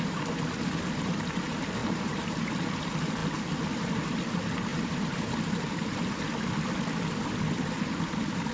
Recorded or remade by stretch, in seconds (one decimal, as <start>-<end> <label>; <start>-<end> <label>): 0.0-1.8 recorded; 1.8-2.3 remade; 2.3-4.7 recorded; 4.7-6.2 remade; 6.2-8.5 recorded